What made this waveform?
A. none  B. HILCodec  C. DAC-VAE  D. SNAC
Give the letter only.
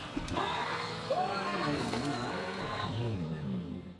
D